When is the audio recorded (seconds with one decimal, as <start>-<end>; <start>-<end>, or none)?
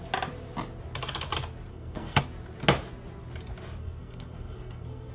0.0-1.7; 2.2-3.8